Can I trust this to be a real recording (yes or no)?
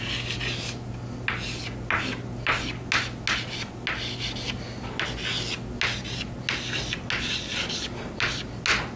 yes